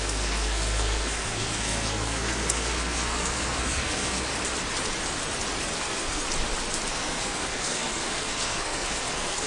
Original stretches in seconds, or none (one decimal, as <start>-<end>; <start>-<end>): 4.3-5.8; 6.2-6.9